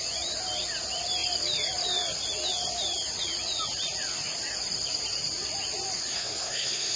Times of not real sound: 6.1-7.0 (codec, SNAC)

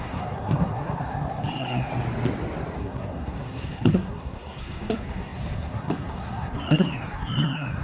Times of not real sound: 0.0-1.9 (codec, SNAC); 2.8-7.8